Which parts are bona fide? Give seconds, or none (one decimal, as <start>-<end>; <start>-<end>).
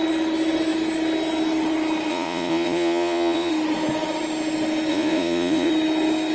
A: 0.0-2.1; 3.5-4.9; 5.7-6.3